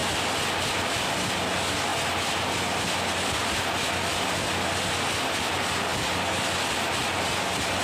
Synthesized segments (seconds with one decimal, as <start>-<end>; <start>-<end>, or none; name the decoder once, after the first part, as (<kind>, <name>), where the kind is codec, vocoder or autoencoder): none